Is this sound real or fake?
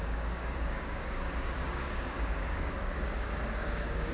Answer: fake